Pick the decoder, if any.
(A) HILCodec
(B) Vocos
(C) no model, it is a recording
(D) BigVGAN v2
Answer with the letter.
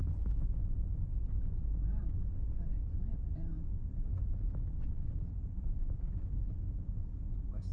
C